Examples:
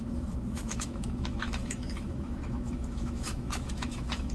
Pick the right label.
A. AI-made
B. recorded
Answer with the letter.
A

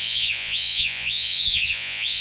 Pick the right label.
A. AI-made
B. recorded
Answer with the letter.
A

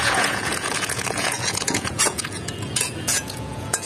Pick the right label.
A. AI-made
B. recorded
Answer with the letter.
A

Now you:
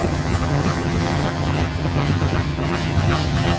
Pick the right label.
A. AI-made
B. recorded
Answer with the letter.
A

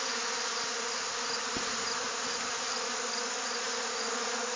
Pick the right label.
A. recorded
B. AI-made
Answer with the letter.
A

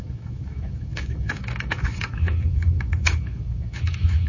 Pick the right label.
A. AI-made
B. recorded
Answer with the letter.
A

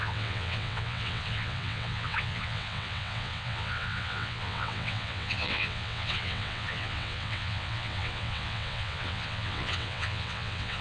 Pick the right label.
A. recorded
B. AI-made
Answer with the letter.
B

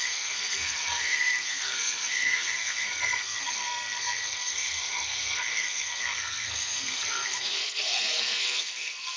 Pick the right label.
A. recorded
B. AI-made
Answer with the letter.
B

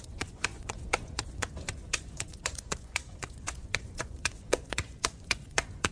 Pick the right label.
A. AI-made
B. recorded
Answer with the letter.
A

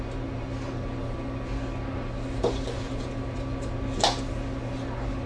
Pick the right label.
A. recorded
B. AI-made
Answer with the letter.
A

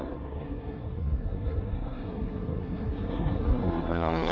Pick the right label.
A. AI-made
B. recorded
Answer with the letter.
A